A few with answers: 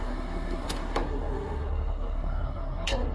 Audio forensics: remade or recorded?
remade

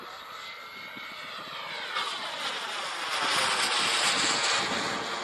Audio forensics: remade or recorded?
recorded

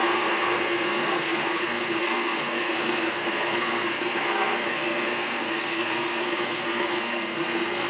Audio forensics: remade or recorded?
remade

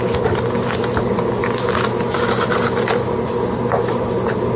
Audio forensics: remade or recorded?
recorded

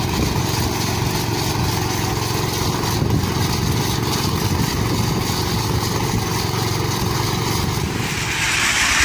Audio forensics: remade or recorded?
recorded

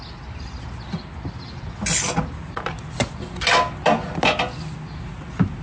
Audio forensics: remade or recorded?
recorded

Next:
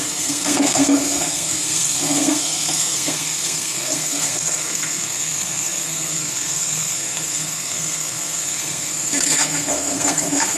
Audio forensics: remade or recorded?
remade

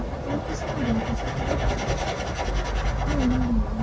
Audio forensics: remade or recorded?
recorded